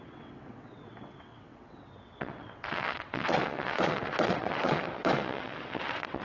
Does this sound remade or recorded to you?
remade